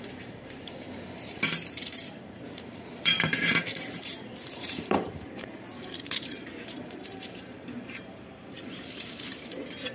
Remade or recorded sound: remade